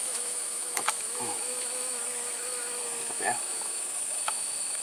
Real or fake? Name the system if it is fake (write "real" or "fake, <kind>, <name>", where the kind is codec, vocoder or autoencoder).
fake, autoencoder, DAC-VAE